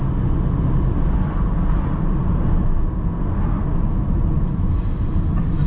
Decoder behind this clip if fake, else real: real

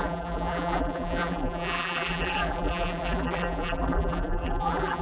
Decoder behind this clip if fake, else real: fake, vocoder, BigVGAN v2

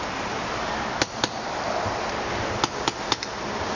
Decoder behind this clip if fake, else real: real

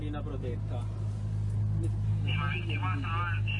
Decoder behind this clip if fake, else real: real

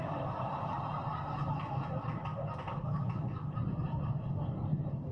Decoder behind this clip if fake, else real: real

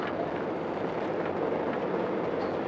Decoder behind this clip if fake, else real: real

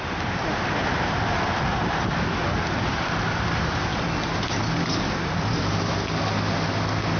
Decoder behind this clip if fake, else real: real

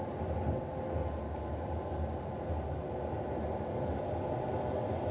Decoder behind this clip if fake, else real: real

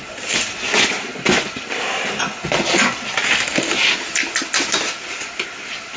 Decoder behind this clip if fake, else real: real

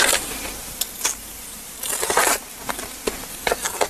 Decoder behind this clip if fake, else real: real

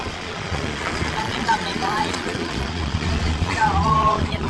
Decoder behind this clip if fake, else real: fake, vocoder, Vocos